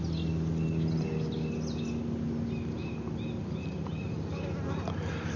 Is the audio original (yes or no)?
yes